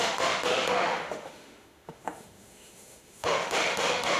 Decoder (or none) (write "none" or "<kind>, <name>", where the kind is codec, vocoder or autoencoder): autoencoder, DAC-VAE